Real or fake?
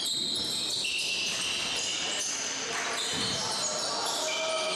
real